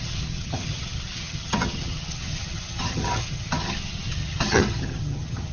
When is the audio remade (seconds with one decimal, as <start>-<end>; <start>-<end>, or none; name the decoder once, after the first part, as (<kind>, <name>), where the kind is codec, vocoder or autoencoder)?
0.0-5.5 (vocoder, HiFi-GAN)